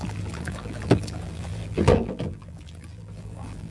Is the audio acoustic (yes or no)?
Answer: no